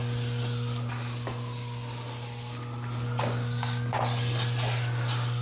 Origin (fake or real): real